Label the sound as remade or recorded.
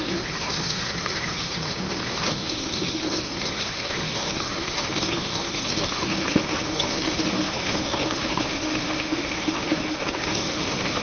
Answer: remade